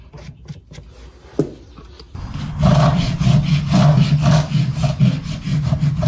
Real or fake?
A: real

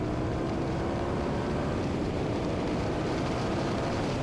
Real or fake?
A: fake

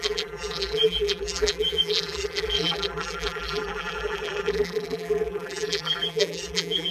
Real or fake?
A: fake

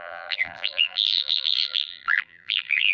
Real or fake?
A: fake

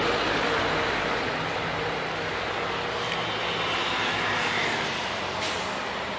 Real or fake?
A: fake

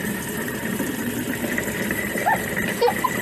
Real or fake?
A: fake